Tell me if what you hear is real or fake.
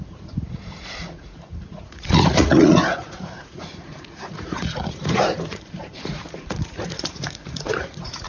fake